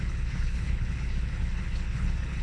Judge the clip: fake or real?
fake